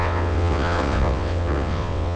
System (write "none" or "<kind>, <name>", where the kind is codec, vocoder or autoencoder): vocoder, WaveNeXt